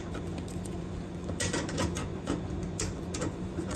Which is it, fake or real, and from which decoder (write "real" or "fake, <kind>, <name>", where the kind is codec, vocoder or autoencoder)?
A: fake, vocoder, Vocos